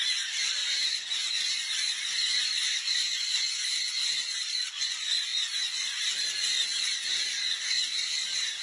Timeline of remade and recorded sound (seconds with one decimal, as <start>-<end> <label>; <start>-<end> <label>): 0.0-0.6 recorded; 0.6-3.3 remade; 3.3-4.1 recorded; 4.1-4.8 remade; 4.8-6.7 recorded; 6.7-8.6 remade